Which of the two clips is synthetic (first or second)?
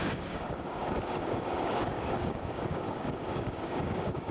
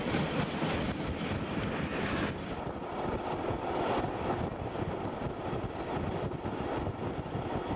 first